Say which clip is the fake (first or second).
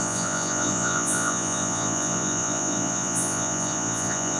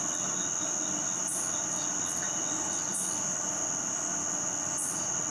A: first